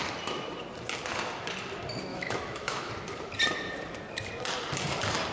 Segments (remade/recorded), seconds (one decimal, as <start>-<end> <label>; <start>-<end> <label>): 0.0-2.1 recorded; 2.1-2.9 remade; 2.9-5.3 recorded